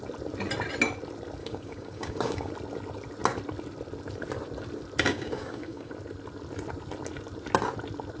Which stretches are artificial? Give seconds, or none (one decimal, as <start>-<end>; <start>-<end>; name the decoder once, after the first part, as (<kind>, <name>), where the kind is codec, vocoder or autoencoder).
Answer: 1.4-2.5 (codec, DAC); 5.1-5.9